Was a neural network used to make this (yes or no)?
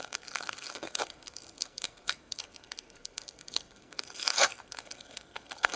yes